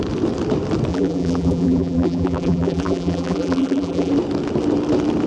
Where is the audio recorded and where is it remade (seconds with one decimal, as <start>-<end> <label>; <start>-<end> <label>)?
0.0-0.9 recorded; 0.9-4.1 remade; 4.1-5.3 recorded